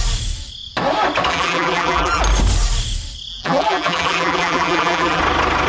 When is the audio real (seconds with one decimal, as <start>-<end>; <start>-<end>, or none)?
0.0-1.3; 2.2-3.3; 5.2-5.7